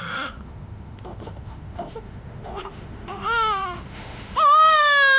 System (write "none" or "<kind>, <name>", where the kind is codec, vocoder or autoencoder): autoencoder, DAC-VAE